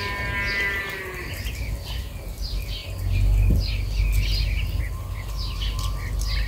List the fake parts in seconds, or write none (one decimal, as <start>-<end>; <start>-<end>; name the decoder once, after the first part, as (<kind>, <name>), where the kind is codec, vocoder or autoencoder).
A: none